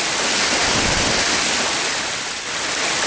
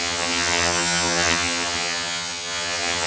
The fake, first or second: second